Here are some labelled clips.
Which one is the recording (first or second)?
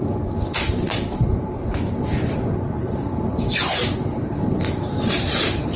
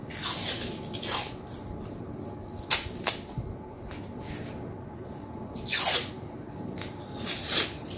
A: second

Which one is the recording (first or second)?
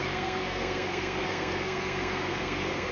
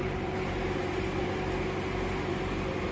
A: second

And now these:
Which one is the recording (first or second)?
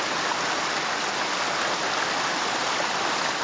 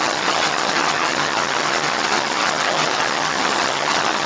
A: first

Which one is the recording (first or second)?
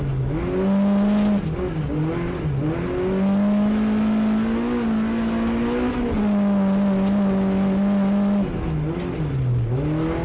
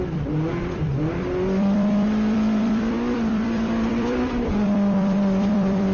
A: first